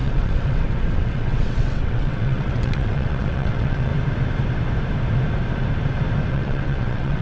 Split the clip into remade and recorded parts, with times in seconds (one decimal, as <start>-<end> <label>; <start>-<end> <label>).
0.0-3.9 remade; 3.9-6.3 recorded; 6.3-7.2 remade